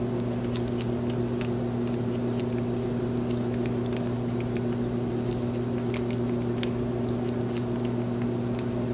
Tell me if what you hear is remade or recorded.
recorded